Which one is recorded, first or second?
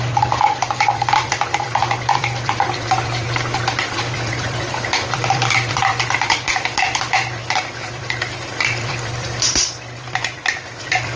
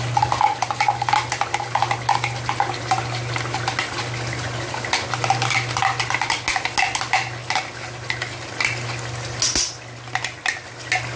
second